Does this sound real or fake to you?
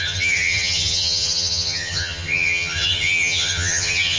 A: fake